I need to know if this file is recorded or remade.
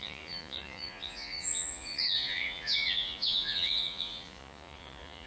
remade